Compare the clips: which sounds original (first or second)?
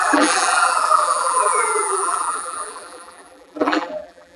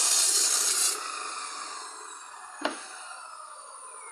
second